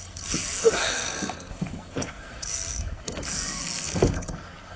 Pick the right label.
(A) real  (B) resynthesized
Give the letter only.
B